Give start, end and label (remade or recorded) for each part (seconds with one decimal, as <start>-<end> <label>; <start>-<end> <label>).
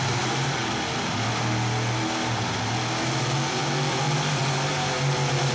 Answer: 0.0-5.5 recorded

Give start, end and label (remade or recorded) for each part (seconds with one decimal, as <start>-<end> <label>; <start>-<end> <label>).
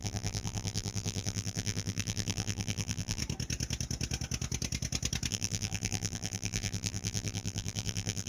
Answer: 0.0-3.2 remade; 3.2-5.3 recorded; 5.3-8.3 remade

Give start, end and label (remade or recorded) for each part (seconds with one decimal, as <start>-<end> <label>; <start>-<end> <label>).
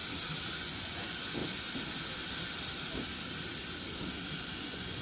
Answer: 0.0-0.6 recorded; 0.6-1.4 remade; 1.4-4.4 recorded; 4.4-5.0 remade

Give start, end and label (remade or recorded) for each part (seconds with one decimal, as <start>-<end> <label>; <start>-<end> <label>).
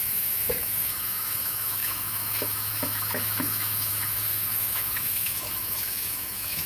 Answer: 0.0-6.7 remade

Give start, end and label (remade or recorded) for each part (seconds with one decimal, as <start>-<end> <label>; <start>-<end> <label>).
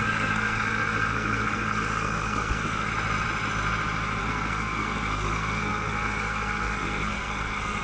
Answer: 0.0-2.9 remade; 2.9-4.2 recorded; 4.2-7.8 remade